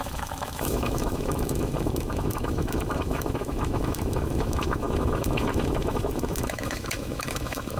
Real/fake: fake